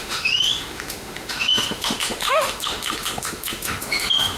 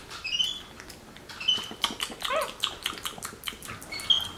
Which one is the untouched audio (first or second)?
second